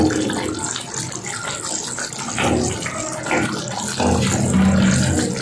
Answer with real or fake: real